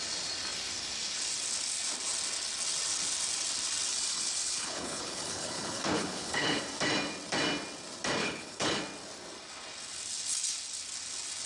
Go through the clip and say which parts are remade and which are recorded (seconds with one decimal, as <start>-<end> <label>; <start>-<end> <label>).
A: 0.0-3.9 recorded; 3.9-6.6 remade; 6.6-8.2 recorded; 8.2-8.8 remade; 8.8-11.5 recorded